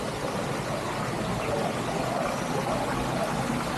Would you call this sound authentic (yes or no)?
yes